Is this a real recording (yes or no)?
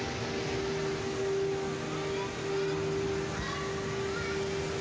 yes